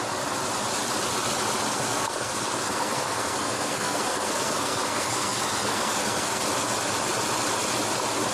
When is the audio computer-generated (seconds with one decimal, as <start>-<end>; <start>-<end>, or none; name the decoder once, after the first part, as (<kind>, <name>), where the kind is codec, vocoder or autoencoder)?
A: 1.7-6.4 (codec, SNAC)